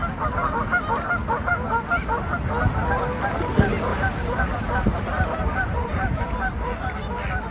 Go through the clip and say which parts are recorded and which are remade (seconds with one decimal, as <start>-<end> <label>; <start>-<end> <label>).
0.0-3.9 recorded; 3.9-6.6 remade; 6.6-7.5 recorded